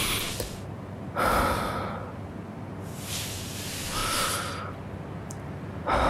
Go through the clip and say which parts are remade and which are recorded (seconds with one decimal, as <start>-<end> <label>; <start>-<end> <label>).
0.0-6.1 recorded